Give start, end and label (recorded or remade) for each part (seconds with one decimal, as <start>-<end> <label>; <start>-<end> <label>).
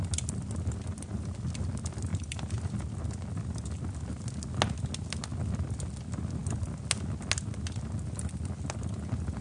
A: 0.0-9.4 recorded